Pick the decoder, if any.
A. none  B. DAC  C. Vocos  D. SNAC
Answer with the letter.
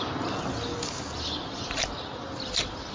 A